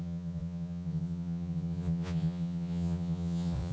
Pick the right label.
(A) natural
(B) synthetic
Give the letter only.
B